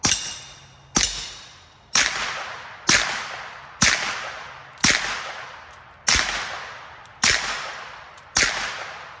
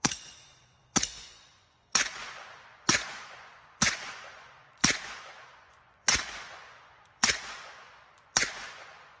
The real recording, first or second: first